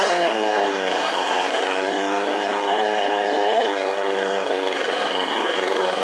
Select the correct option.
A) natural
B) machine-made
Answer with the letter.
B